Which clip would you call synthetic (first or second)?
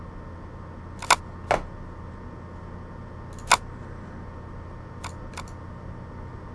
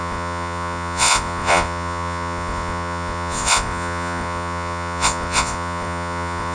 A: second